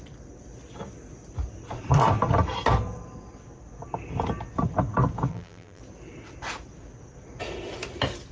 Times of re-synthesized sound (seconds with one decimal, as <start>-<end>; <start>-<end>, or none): 5.3-5.8